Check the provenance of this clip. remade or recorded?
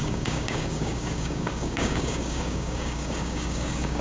remade